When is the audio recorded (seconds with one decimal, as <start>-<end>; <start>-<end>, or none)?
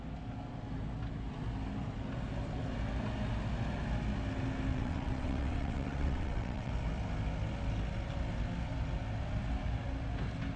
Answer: 0.0-4.7; 6.7-10.6